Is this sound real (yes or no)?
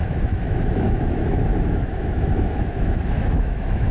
no